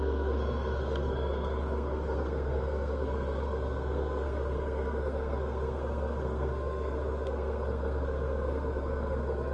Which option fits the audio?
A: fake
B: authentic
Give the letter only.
A